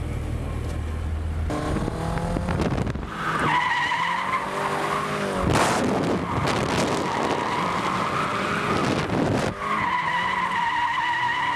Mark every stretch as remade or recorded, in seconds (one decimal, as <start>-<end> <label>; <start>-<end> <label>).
0.0-11.6 recorded